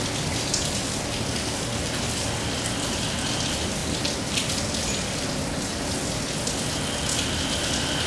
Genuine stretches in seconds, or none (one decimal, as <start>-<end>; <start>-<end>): 0.0-8.1